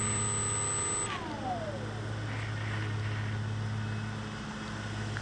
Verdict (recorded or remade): recorded